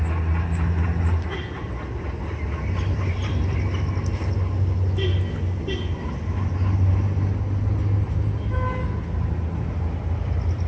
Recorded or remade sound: recorded